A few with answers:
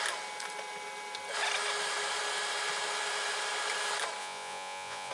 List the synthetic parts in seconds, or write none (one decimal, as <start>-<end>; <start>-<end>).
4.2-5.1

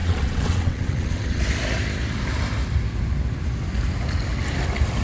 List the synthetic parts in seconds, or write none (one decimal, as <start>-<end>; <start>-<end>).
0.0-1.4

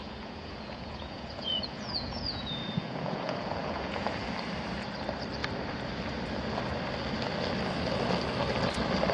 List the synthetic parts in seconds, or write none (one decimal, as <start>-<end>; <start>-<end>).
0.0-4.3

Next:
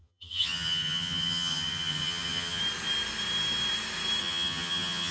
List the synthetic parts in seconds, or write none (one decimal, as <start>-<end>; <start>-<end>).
0.0-2.6; 4.2-5.1

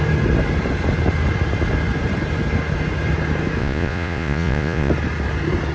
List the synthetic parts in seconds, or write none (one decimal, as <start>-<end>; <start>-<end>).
3.6-4.9

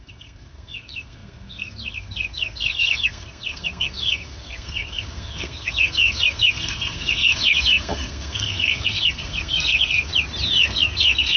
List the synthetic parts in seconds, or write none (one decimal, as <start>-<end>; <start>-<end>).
0.0-10.1; 10.6-11.4

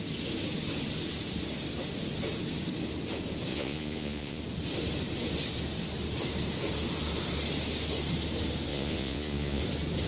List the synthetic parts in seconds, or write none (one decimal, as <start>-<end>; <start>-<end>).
3.5-4.4; 8.7-9.6